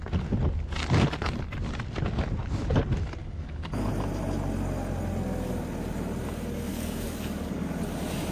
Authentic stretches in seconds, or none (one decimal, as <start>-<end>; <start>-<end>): 0.0-3.2; 3.9-6.7; 7.7-8.3